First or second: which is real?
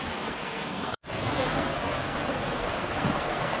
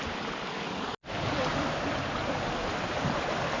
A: second